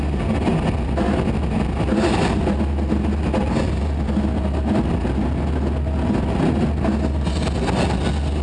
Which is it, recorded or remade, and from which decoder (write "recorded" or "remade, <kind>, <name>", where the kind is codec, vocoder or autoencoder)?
recorded